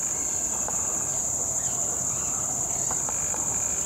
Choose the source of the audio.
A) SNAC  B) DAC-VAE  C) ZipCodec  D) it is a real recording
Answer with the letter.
D